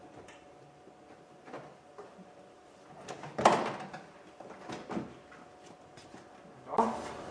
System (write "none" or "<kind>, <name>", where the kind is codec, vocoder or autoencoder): none